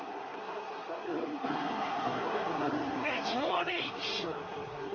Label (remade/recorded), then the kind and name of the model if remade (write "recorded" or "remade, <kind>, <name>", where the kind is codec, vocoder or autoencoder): remade, codec, SNAC